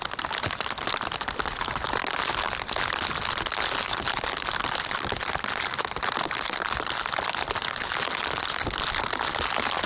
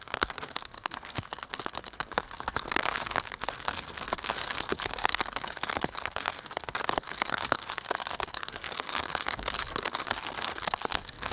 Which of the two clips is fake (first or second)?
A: second